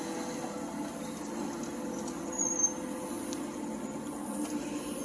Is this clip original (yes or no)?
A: yes